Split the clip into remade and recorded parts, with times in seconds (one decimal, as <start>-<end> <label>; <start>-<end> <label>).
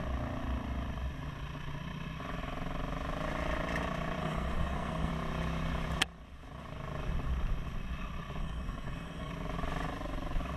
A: 0.0-4.2 recorded; 4.2-5.1 remade; 5.1-8.4 recorded; 8.4-9.3 remade; 9.3-10.6 recorded